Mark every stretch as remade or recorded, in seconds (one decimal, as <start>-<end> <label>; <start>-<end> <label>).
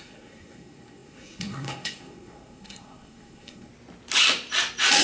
0.0-3.7 remade; 3.7-5.0 recorded